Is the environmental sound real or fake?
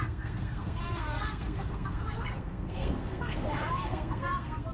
fake